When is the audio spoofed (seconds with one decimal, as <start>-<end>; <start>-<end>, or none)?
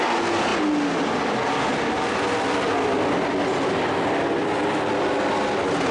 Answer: none